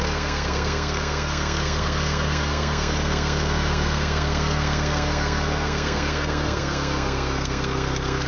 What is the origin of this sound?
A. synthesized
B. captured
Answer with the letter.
A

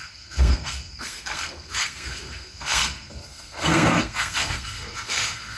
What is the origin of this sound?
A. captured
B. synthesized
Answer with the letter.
B